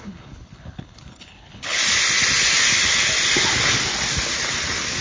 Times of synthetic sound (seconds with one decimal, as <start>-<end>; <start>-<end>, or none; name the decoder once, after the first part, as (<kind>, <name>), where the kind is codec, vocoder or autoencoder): 0.0-1.8 (codec, HILCodec)

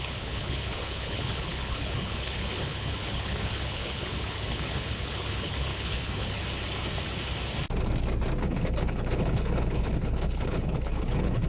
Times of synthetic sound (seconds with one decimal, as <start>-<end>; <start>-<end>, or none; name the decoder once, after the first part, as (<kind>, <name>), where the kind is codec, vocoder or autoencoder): 0.0-6.4 (codec, HILCodec); 8.4-11.5

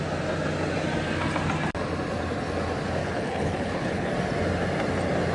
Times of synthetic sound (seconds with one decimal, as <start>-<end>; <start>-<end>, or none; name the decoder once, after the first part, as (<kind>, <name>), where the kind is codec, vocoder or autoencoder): 3.0-4.1 (codec, HILCodec)

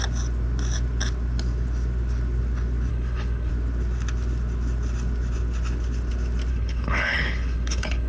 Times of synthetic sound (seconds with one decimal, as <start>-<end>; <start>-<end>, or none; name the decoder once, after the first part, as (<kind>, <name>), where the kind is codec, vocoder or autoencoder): 2.9-3.5 (codec, HILCodec); 6.5-8.1

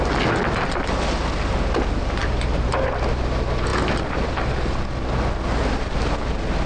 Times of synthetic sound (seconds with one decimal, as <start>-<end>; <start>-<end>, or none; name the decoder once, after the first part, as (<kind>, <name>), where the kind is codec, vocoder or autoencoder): none

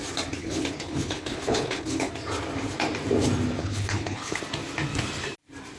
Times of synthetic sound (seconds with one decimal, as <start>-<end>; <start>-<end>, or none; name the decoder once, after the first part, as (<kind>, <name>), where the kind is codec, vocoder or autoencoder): 0.4-2.1 (codec, HILCodec); 3.6-4.4

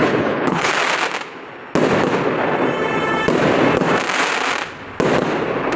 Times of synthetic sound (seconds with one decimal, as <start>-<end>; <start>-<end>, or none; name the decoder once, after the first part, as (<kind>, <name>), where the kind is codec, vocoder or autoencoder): 0.0-0.7 (codec, HILCodec)

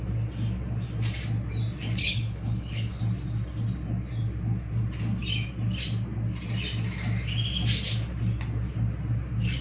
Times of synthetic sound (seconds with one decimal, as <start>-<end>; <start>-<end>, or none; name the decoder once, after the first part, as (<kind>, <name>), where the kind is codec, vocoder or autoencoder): 2.0-3.0 (codec, HILCodec)